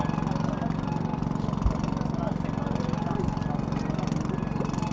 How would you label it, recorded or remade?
recorded